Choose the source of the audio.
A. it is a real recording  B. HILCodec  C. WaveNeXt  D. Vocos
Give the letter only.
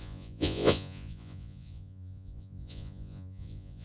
D